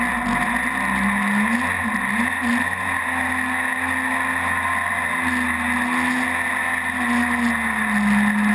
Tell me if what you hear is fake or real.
real